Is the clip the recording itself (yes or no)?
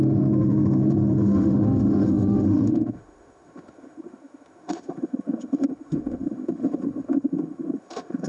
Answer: no